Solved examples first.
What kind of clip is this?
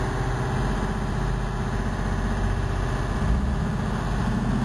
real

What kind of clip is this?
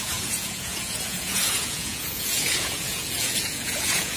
fake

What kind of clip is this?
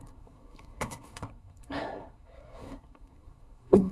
fake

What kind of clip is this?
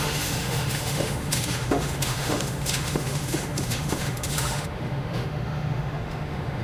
fake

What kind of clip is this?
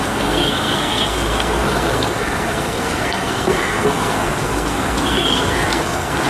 fake